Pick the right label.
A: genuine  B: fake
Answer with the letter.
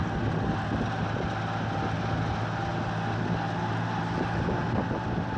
A